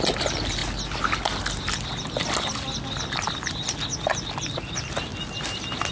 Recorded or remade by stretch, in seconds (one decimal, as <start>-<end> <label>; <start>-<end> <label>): 0.0-5.9 recorded